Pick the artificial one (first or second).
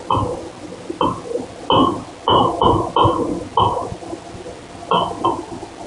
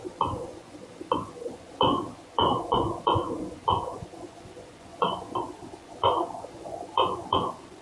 second